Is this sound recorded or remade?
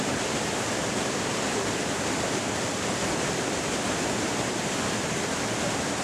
remade